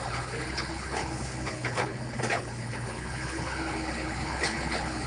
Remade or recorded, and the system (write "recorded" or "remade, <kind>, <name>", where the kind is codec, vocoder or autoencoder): remade, codec, HILCodec